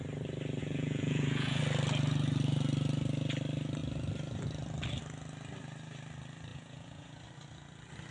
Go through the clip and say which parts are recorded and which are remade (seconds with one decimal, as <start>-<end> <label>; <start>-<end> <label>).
0.0-0.6 recorded; 0.6-1.6 remade; 1.6-6.5 recorded; 6.5-7.2 remade; 7.2-8.1 recorded